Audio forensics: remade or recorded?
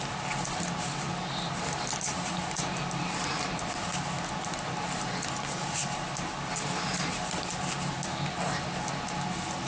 recorded